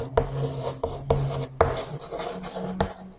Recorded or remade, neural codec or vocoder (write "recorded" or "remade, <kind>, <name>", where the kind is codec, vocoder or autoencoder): recorded